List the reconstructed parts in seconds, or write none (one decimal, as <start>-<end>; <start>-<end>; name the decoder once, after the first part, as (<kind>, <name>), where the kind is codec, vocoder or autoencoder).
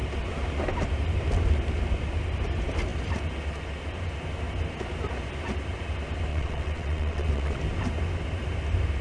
6.3-7.6 (vocoder, WaveNeXt)